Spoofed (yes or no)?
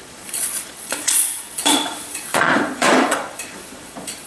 yes